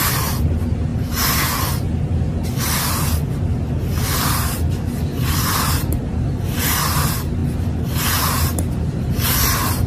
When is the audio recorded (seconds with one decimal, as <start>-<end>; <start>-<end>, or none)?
0.0-9.9